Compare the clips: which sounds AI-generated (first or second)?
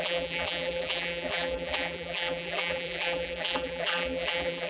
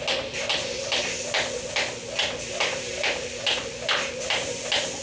first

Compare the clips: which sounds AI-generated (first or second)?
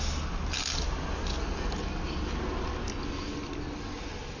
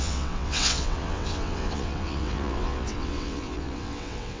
second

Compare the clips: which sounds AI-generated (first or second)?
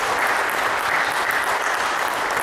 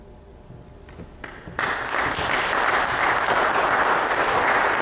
first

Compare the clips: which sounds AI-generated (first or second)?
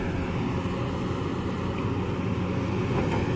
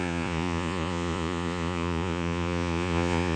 second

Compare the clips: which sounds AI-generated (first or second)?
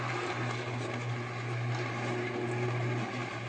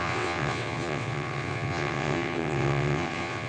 second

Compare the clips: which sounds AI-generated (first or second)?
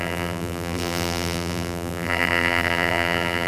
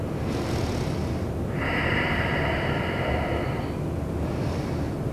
first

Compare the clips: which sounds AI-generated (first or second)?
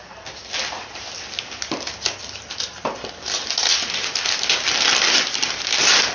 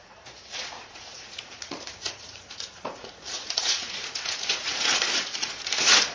second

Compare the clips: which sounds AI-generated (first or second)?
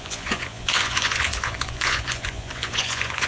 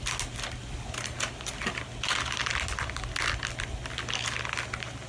first